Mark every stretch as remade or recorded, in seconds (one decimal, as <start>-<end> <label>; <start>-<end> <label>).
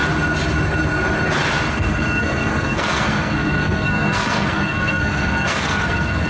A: 0.0-1.7 recorded; 1.7-6.3 remade